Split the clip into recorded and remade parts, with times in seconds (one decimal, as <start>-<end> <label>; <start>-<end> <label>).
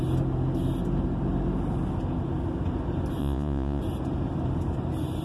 0.0-3.2 recorded; 3.2-3.8 remade; 3.8-5.2 recorded